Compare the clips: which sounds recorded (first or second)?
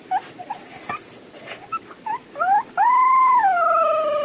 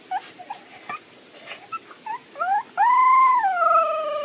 second